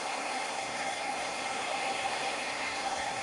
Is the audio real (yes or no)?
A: no